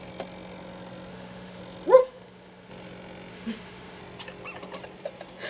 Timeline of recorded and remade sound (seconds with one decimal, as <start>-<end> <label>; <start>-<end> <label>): 0.0-1.1 recorded; 1.1-1.6 remade; 1.6-2.0 recorded; 2.0-2.7 remade; 2.7-3.3 recorded; 3.3-4.0 remade; 4.0-5.5 recorded